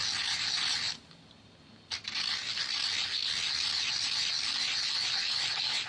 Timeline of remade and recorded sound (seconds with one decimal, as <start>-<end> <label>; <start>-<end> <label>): 0.0-5.9 recorded